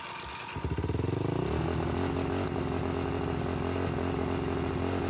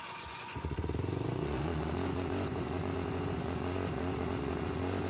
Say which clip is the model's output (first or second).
second